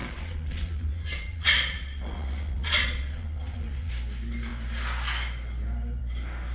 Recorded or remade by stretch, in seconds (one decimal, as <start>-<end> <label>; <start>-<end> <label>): 0.0-3.9 remade; 3.9-6.5 recorded